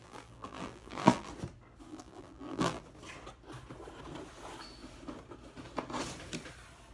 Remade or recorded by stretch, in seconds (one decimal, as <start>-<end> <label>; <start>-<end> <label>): 0.0-1.3 remade; 1.3-1.9 recorded; 1.9-2.8 remade; 2.8-6.9 recorded